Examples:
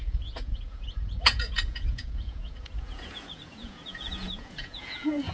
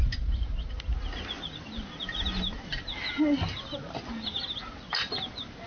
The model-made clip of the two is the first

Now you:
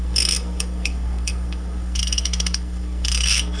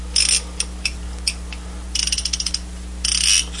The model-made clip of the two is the first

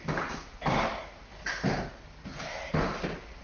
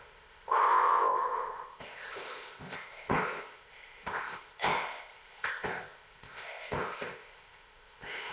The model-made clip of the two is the second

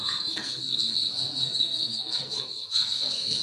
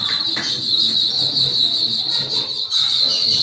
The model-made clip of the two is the first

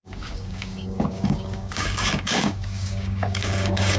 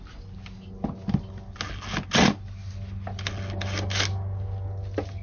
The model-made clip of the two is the first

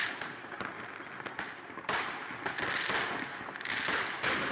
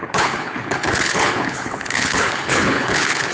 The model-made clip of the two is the second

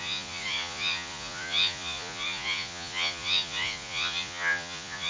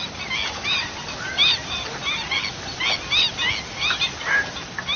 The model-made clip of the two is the first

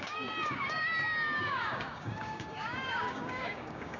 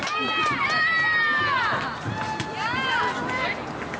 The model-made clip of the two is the first